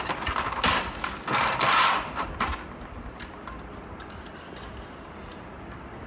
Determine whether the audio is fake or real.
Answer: real